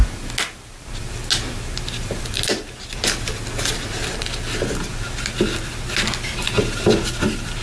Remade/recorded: recorded